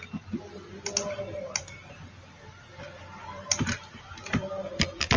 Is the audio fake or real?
real